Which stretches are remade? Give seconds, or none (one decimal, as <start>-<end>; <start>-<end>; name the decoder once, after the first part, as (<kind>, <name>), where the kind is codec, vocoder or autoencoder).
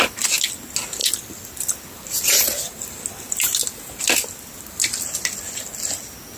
none